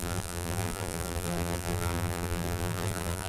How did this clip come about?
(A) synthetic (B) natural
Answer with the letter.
A